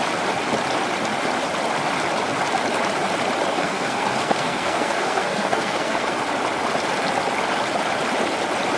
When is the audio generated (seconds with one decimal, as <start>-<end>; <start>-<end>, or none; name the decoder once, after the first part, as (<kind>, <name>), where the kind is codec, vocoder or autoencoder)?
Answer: 3.5-6.2 (codec, SNAC)